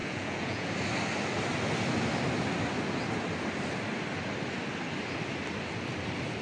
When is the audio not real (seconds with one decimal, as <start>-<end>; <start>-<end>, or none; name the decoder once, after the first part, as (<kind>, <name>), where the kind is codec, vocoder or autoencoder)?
0.0-0.7 (vocoder, Vocos)